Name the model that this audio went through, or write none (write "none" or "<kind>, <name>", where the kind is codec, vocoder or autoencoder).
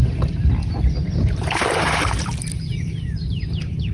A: none